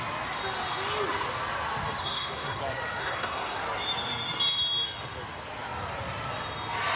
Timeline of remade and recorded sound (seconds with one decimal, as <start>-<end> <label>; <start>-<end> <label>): 0.0-2.0 recorded; 2.0-2.6 remade; 2.6-3.0 recorded; 3.0-3.6 remade; 3.6-7.0 recorded